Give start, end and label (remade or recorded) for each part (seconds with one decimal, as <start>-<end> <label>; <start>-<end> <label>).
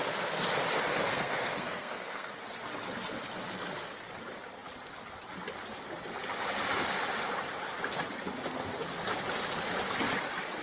0.0-1.1 recorded; 1.1-2.3 remade; 2.3-10.6 recorded